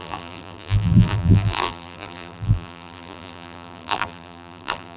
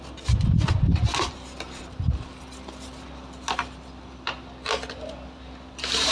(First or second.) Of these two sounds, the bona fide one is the second